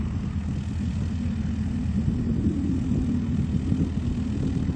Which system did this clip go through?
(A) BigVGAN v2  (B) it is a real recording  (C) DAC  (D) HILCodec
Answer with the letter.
B